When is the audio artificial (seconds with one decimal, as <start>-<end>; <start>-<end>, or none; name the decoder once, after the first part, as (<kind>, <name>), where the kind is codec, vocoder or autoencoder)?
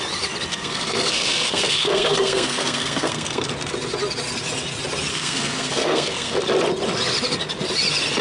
0.5-3.5 (codec, SNAC); 5.1-6.4